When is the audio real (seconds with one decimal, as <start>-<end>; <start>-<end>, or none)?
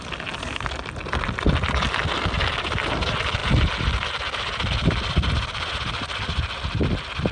0.0-7.3